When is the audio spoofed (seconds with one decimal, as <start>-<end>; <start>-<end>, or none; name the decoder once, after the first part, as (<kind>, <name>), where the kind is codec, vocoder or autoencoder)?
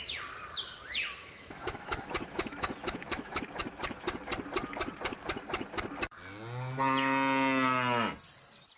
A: 1.2-3.4 (autoencoder, DAC-VAE)